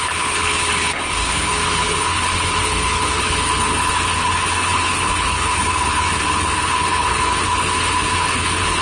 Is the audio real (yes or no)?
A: no